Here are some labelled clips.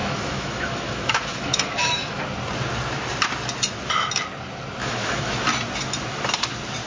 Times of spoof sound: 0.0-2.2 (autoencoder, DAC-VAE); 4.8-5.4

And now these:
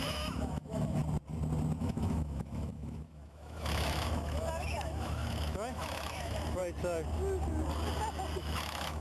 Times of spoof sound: 0.0-1.0 (autoencoder, DAC-VAE); 1.8-6.6; 8.4-9.0

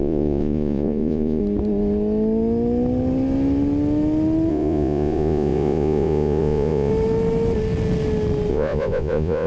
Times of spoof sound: 0.0-1.4 (vocoder, Vocos); 4.5-6.9; 8.5-9.5